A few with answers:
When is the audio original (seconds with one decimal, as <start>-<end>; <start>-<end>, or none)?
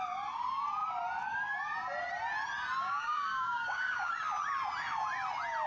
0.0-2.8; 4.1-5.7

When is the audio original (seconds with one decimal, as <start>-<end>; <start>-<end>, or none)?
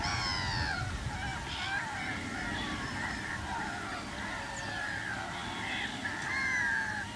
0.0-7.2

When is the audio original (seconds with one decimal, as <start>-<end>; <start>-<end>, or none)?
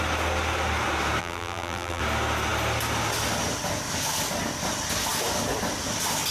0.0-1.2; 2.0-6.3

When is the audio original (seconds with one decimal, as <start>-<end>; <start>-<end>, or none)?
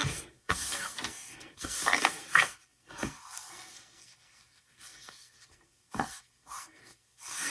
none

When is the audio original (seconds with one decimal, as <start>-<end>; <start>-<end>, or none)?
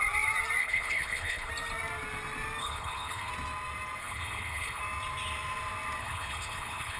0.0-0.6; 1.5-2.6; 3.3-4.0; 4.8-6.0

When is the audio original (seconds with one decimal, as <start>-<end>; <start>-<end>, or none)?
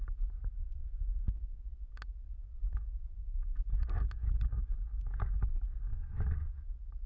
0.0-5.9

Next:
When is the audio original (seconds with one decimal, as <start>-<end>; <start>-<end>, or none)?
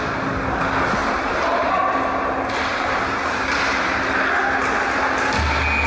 0.0-1.0; 1.7-2.7; 3.7-5.9